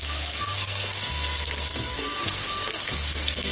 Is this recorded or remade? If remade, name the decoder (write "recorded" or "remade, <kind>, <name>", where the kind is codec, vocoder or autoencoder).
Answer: remade, codec, SNAC